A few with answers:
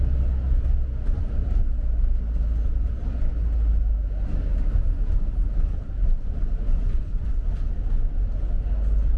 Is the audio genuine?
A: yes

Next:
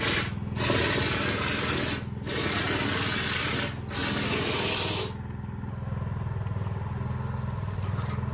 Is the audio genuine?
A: yes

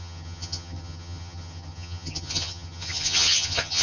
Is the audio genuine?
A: no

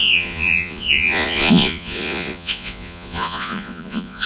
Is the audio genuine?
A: no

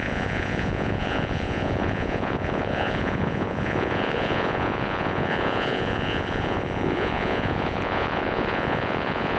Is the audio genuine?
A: no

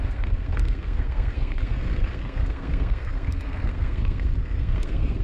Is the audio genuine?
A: no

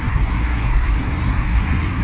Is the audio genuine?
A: no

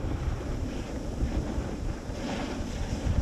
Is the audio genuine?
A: no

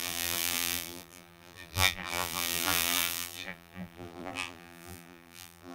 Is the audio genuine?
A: no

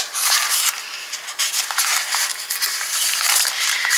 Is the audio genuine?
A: yes